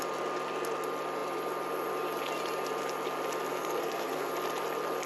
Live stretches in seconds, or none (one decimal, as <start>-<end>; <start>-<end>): 0.0-3.5; 4.3-5.1